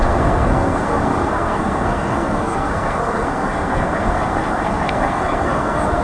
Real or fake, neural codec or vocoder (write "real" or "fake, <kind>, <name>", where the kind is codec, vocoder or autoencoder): fake, codec, SNAC